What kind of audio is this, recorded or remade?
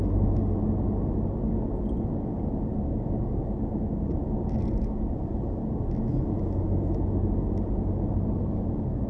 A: recorded